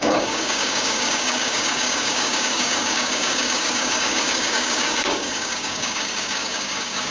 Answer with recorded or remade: remade